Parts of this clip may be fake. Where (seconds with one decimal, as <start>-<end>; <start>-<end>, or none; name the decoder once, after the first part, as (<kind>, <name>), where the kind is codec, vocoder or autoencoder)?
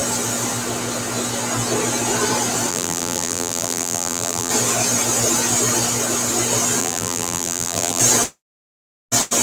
2.7-4.5 (vocoder, BigVGAN v2); 6.8-8.0